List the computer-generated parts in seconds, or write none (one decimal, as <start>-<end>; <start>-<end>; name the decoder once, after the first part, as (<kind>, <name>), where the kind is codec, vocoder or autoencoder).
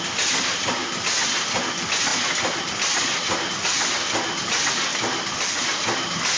4.9-5.6 (vocoder, BigVGAN v2)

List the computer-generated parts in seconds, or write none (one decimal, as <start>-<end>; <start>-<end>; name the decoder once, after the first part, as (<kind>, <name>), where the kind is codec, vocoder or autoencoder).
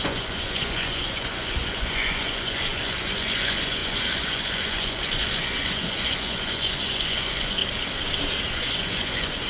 0.0-7.6 (vocoder, Vocos); 8.5-9.5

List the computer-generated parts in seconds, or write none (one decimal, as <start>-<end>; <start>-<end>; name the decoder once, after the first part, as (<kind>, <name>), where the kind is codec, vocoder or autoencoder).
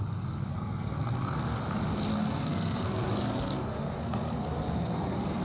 0.5-1.6 (codec, SNAC); 2.1-5.4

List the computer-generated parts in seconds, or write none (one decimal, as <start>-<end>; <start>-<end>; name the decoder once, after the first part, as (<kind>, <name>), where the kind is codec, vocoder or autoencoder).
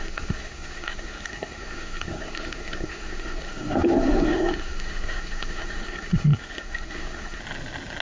0.0-7.4 (codec, SNAC)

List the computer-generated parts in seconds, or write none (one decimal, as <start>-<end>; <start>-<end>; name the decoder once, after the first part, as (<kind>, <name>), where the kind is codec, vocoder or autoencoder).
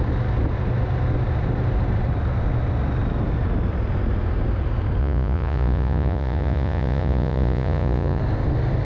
5.0-8.2 (vocoder, Vocos)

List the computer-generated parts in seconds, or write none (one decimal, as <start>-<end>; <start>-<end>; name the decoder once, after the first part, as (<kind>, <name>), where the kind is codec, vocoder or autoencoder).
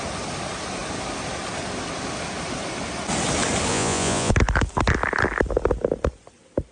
3.7-4.3 (vocoder, Vocos)